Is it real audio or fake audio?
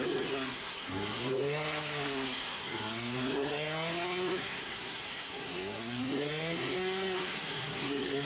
fake